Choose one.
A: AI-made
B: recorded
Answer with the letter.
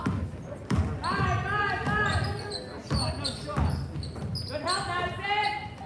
B